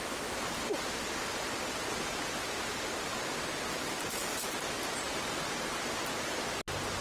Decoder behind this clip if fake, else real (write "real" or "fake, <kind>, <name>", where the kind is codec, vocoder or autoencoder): real